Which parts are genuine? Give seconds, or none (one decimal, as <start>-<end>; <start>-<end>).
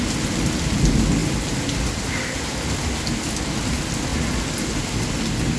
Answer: 0.0-5.6